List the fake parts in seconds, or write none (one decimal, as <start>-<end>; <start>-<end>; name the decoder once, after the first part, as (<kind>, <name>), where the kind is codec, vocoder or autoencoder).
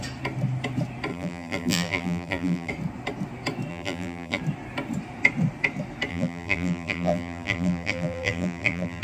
1.1-2.7 (vocoder, BigVGAN v2); 3.7-4.4; 6.1-9.0